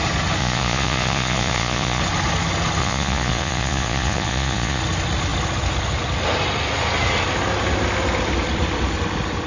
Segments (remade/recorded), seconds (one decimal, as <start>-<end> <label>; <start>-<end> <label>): 0.0-0.4 recorded; 0.4-2.0 remade; 2.0-2.8 recorded; 2.8-4.8 remade; 4.8-9.5 recorded